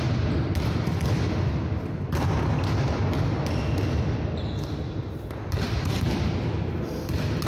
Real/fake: real